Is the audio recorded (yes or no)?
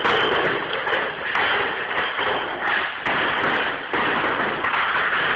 yes